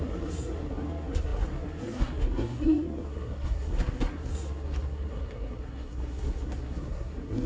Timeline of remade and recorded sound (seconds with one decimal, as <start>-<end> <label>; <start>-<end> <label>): 0.0-7.5 remade